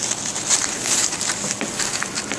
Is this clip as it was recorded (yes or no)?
yes